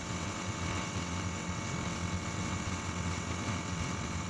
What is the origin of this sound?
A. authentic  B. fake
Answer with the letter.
B